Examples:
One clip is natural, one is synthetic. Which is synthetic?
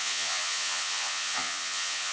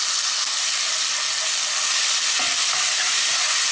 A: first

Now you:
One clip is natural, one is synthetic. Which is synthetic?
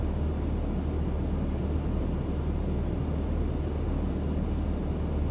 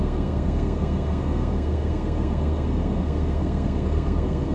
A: second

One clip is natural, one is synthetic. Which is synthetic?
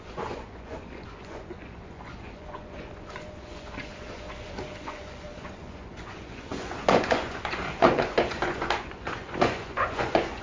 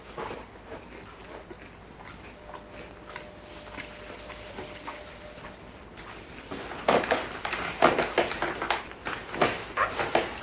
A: first